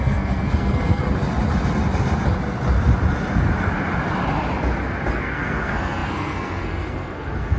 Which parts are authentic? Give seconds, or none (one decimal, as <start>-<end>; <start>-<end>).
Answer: 1.0-5.1